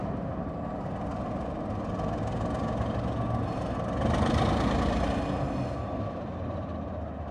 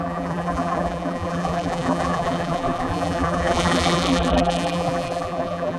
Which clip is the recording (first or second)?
first